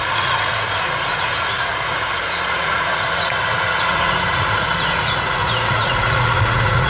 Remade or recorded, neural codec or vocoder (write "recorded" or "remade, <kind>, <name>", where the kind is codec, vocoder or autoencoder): remade, vocoder, Vocos